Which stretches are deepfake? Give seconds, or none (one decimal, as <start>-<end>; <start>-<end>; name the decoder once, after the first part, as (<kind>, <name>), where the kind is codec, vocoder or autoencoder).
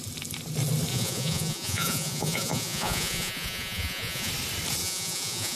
0.9-4.3 (vocoder, Vocos); 4.8-5.6